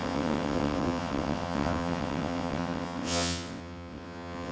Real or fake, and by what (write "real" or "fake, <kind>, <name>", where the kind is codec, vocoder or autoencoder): fake, vocoder, WaveNeXt